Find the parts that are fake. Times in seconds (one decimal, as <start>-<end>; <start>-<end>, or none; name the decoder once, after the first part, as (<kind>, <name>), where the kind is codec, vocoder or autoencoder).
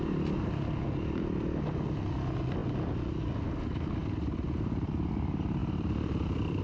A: 5.6-6.6 (vocoder, BigVGAN v2)